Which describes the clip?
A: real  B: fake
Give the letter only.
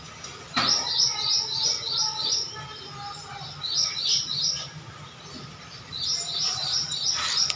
A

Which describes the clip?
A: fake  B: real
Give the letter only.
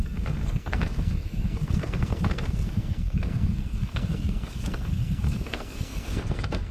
A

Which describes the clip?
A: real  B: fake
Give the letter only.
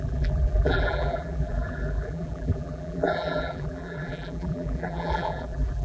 B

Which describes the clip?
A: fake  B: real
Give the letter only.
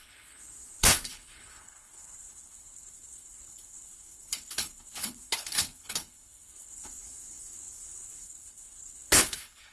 A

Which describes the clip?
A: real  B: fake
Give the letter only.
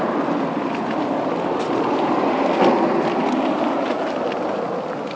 A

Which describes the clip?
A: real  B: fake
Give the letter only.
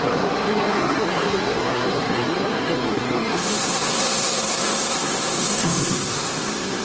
B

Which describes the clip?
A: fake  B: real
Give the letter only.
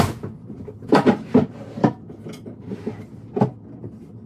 B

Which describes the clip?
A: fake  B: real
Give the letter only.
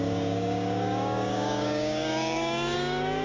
A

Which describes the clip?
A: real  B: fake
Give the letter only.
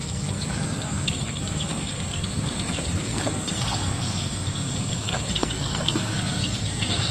B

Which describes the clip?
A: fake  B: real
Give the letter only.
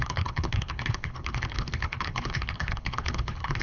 A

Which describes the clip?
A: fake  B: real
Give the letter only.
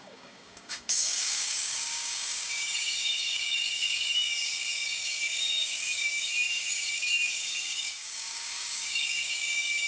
A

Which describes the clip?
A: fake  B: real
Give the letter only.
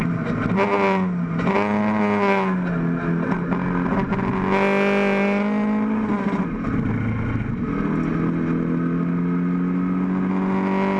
B